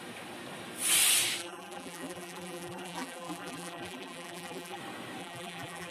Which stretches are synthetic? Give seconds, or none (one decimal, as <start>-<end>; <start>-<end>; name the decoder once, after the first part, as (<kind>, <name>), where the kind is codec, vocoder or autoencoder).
1.4-4.8 (vocoder, BigVGAN v2); 5.2-5.9